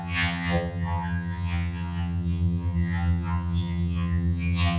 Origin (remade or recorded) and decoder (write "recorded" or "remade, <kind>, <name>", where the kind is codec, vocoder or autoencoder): remade, vocoder, HiFi-GAN